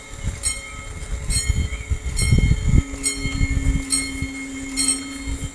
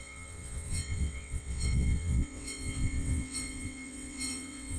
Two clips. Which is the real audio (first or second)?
first